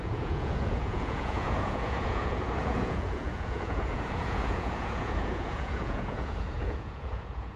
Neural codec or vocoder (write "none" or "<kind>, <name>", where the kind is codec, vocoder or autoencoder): vocoder, Vocos